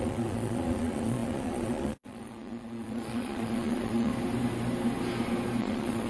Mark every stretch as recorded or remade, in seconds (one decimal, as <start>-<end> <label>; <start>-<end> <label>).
0.0-4.1 remade; 4.1-5.6 recorded; 5.6-6.1 remade